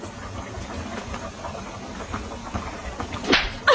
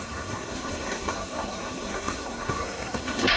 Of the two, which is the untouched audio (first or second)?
first